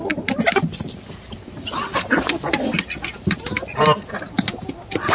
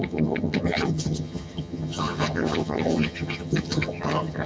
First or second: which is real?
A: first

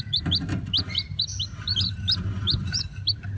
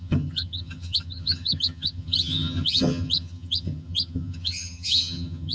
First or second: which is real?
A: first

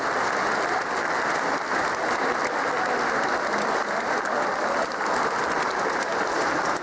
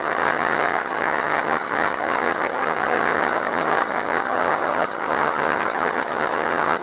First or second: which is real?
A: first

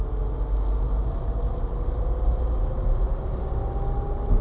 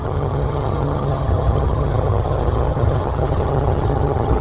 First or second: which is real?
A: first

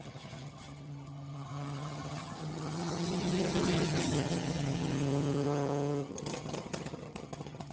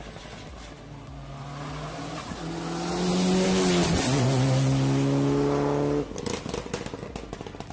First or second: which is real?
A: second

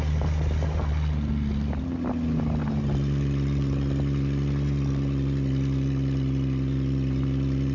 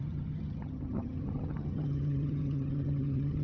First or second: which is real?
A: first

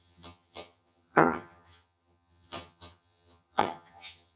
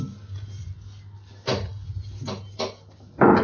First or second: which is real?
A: second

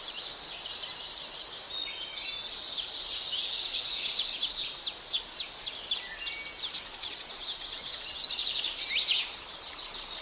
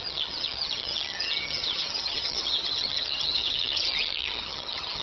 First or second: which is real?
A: first